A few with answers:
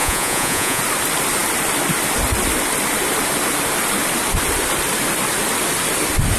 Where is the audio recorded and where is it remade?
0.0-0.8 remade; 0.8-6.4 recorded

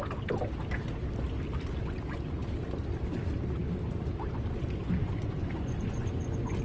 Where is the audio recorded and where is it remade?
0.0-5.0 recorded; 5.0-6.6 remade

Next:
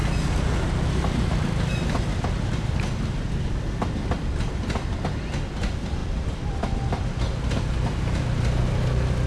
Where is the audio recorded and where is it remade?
0.0-9.3 recorded

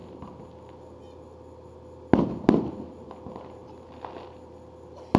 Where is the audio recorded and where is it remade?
0.0-5.2 recorded